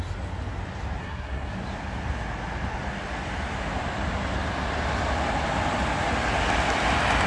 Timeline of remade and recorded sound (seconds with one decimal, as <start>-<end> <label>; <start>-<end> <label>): 0.0-1.0 recorded; 1.0-1.5 remade; 1.5-7.3 recorded